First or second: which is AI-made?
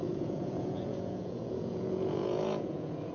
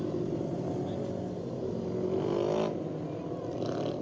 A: first